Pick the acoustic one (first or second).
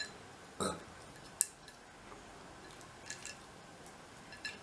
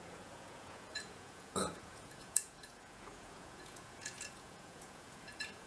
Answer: first